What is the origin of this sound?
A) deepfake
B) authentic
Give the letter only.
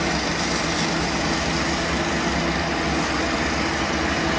B